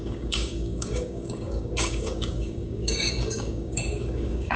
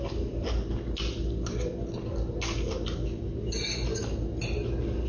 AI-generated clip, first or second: first